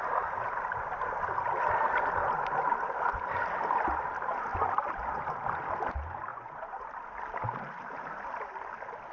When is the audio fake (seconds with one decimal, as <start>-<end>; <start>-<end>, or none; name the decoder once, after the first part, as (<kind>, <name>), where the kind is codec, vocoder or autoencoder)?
6.3-6.9 (vocoder, Vocos)